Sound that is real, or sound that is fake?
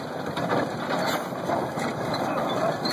real